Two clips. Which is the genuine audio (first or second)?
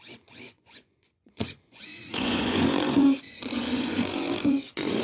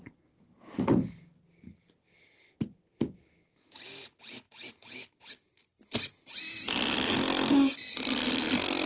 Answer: second